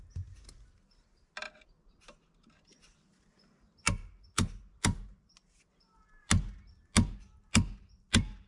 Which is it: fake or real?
real